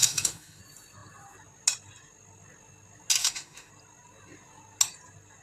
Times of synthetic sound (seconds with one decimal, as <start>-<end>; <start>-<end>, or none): 0.0-0.6; 3.2-3.7